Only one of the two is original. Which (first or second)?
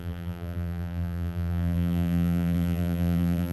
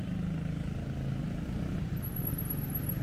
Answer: second